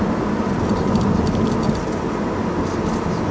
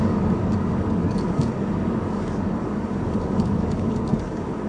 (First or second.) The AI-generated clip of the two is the second